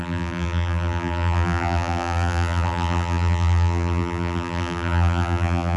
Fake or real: fake